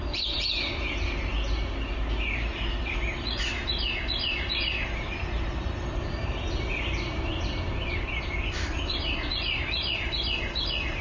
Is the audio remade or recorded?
recorded